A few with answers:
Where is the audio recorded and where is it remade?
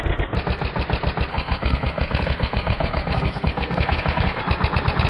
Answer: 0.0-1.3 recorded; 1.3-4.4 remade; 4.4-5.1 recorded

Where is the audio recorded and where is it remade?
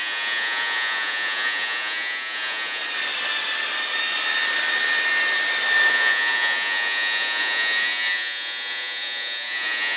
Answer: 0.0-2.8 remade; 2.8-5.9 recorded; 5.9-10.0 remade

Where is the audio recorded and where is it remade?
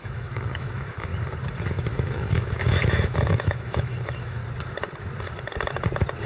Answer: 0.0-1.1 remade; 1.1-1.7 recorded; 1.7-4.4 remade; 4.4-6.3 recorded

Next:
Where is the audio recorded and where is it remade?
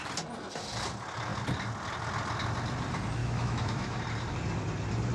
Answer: 0.0-3.2 recorded; 3.2-4.0 remade; 4.0-5.1 recorded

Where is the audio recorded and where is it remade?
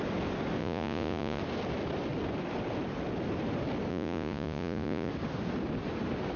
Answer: 0.0-0.6 recorded; 0.6-1.4 remade; 1.4-3.9 recorded; 3.9-5.1 remade; 5.1-6.4 recorded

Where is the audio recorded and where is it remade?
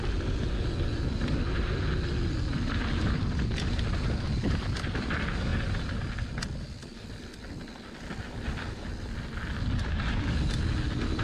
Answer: 0.0-11.2 recorded